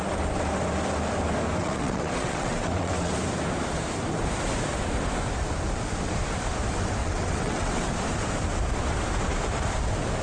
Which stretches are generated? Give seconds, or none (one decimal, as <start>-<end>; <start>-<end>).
1.6-3.1; 7.0-7.9